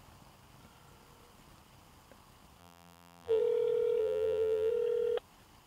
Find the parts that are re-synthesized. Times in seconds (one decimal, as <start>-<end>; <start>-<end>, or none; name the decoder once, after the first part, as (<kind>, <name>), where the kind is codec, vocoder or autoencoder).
2.6-3.4 (vocoder, BigVGAN v2); 4.0-4.7